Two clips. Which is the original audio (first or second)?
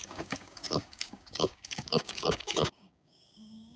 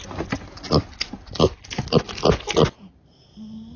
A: second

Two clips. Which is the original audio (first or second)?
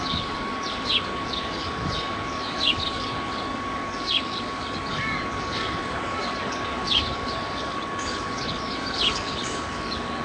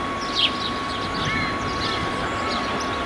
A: second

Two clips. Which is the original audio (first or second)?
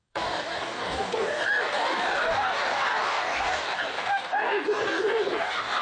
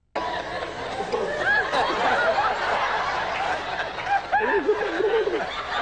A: second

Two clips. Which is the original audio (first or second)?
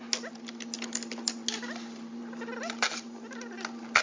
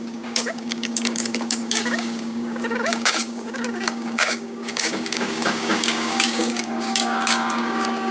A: first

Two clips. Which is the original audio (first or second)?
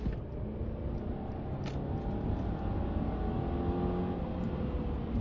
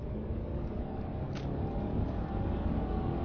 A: first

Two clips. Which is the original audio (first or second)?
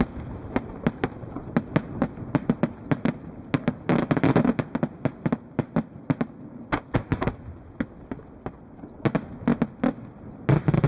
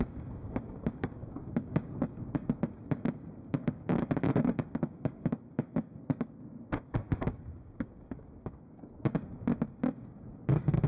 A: first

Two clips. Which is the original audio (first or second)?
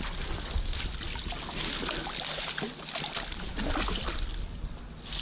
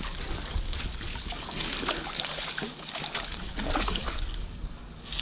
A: first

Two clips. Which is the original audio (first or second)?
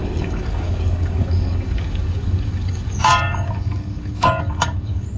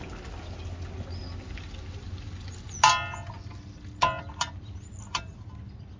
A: second